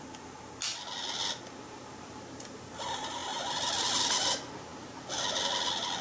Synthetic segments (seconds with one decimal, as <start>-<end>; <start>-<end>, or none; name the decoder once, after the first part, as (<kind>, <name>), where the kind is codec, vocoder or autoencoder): none